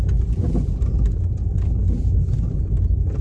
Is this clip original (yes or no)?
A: yes